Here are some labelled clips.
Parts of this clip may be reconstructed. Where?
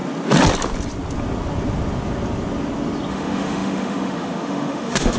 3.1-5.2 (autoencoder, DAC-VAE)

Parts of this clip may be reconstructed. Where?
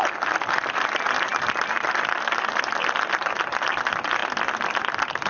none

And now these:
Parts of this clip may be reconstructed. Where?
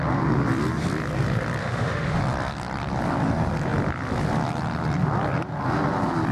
1.6-2.2 (autoencoder, DAC-VAE)